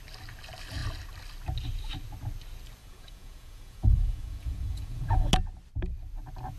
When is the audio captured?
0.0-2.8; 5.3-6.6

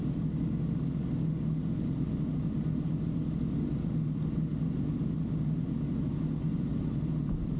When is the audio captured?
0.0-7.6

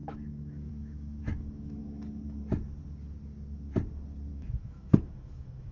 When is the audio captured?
1.8-4.3

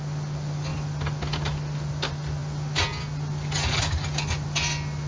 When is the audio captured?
0.0-5.1